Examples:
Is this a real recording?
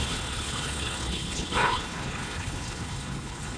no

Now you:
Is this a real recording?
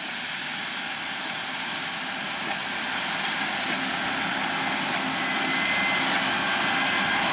yes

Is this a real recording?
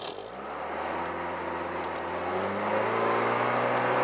yes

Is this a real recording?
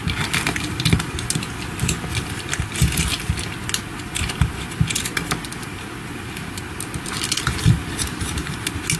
yes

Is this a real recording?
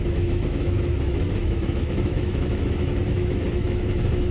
no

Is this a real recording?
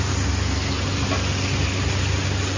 yes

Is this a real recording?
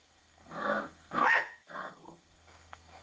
no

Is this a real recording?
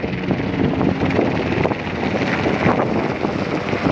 yes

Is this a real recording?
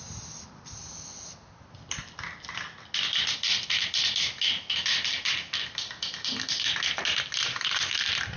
yes